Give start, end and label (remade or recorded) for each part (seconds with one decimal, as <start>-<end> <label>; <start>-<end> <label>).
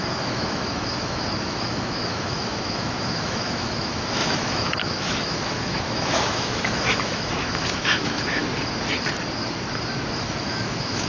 0.0-8.4 remade; 8.4-10.2 recorded; 10.2-11.1 remade